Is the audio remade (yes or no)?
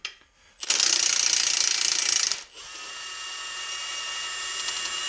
no